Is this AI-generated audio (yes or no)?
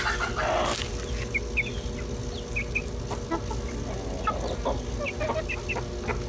no